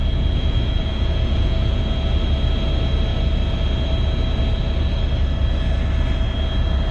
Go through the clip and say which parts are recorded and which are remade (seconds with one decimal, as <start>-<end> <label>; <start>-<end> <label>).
0.0-1.8 remade; 1.8-6.9 recorded